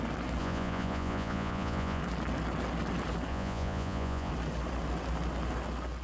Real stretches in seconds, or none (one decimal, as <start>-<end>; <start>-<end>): 0.0-0.4; 2.0-3.3; 4.3-6.0

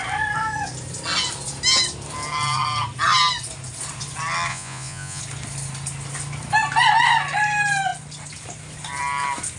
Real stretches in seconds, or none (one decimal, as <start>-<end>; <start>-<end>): 0.0-4.5; 5.2-9.6

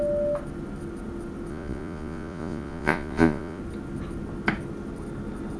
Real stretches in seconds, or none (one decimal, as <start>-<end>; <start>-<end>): 0.0-1.5; 3.6-5.6

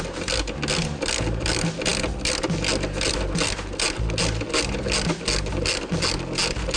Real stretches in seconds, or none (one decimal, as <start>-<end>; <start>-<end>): 0.0-6.8

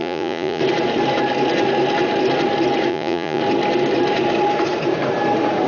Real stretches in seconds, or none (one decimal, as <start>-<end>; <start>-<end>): 0.6-2.9; 3.4-5.7